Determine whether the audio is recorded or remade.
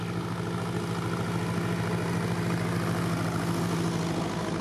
recorded